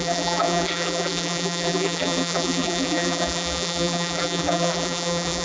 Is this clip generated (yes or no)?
yes